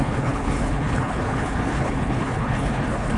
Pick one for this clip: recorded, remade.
remade